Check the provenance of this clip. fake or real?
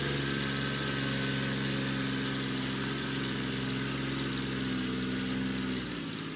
real